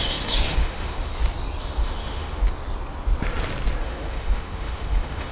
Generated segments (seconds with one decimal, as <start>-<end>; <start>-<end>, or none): 0.0-1.1; 1.6-2.4; 3.8-5.3